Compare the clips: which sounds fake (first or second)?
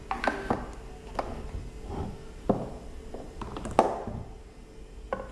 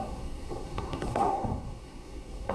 second